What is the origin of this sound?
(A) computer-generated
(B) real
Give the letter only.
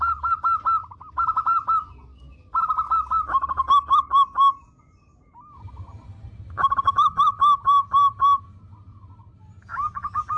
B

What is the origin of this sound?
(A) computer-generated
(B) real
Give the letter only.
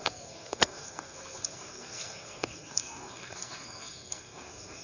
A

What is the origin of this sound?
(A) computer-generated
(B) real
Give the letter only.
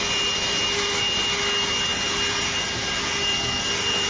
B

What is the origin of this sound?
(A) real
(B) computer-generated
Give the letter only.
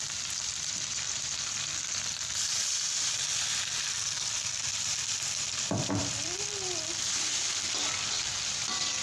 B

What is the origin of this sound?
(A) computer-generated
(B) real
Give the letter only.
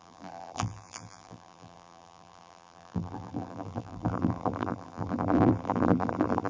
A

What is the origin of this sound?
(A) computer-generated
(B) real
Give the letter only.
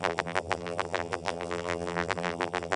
A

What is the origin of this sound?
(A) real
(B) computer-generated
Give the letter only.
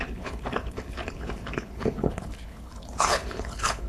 B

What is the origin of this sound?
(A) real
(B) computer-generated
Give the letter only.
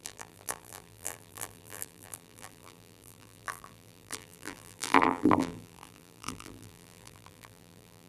B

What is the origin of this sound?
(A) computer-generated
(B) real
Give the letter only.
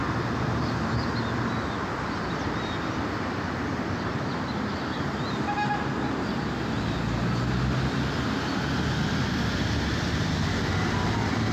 B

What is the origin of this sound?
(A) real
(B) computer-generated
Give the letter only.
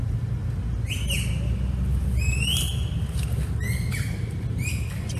A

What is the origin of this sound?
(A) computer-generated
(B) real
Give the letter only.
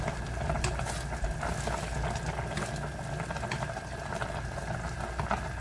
B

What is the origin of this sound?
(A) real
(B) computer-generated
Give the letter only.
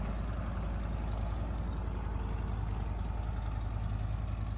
A